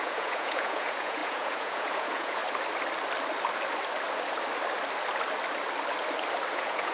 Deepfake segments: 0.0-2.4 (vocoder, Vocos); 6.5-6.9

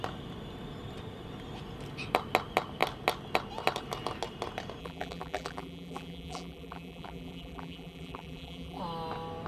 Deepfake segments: 4.8-8.8 (vocoder, BigVGAN v2)

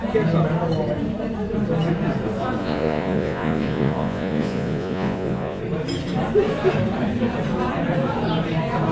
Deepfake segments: 2.6-5.6 (vocoder, Vocos)

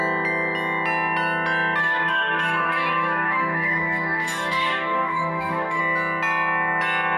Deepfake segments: 1.8-5.8 (codec, DAC)

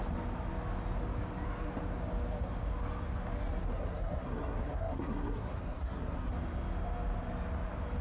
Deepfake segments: 3.6-6.3 (codec, SNAC)